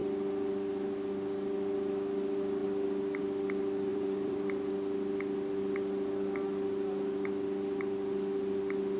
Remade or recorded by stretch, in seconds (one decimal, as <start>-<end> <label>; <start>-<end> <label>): 0.0-3.9 recorded; 3.9-4.7 remade; 4.7-9.0 recorded